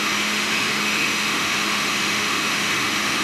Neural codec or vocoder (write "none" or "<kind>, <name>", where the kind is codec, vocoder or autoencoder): autoencoder, DAC-VAE